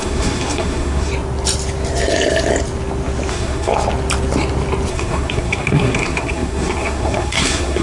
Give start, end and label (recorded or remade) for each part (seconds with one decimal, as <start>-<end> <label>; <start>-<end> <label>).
0.0-1.1 remade; 1.1-3.3 recorded; 3.3-3.7 remade; 3.7-4.9 recorded; 4.9-7.8 remade